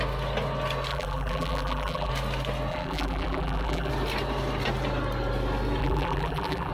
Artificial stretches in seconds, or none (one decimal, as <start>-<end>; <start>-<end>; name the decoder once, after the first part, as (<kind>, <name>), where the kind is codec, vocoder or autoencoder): 0.9-2.1 (vocoder, BigVGAN v2); 2.7-3.9; 5.8-6.7

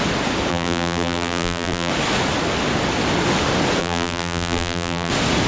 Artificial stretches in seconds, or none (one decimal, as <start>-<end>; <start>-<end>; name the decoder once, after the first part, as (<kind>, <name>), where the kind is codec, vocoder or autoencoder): 0.5-1.9 (vocoder, BigVGAN v2); 3.8-5.1

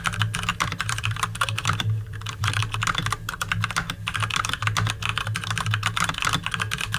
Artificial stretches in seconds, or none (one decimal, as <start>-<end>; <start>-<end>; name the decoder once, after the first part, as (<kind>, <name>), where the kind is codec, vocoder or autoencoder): 0.5-2.6 (vocoder, BigVGAN v2)

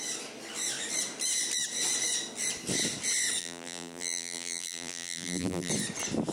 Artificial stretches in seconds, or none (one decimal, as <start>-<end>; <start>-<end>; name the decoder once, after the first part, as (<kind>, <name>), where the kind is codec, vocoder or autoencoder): 3.4-5.7 (vocoder, BigVGAN v2)

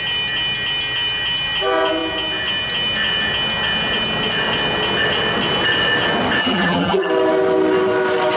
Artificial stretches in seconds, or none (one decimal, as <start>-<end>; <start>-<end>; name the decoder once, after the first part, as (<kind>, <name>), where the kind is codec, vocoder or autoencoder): 6.4-7.1 (vocoder, BigVGAN v2)

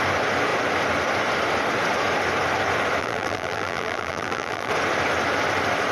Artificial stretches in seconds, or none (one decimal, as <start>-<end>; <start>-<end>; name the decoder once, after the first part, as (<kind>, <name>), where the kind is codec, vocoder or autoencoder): 3.0-4.7 (vocoder, BigVGAN v2)

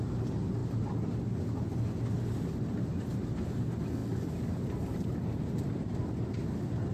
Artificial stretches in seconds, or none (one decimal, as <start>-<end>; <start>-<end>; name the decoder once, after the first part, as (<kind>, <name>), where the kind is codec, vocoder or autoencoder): 0.6-2.1 (vocoder, BigVGAN v2); 4.0-4.8

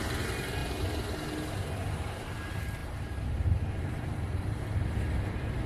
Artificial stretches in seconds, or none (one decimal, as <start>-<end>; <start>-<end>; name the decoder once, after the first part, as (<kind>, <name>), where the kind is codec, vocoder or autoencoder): 0.0-0.6 (vocoder, BigVGAN v2); 1.9-5.7